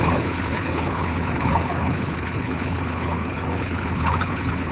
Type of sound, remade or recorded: remade